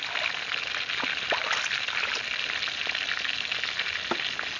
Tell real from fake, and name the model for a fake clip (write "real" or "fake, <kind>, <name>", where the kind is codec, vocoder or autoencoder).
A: real